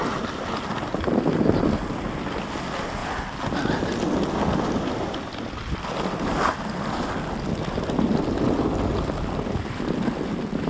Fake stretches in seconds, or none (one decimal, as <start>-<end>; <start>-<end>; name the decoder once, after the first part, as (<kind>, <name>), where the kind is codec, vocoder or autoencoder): none